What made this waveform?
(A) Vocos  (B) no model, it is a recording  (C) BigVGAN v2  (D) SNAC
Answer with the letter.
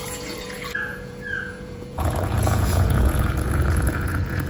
A